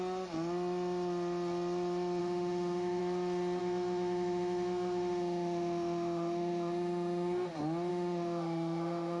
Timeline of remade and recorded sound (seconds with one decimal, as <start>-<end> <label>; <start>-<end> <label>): 0.0-2.2 recorded; 2.2-3.0 remade; 3.0-3.6 recorded; 3.6-7.5 remade; 7.5-7.9 recorded; 7.9-9.2 remade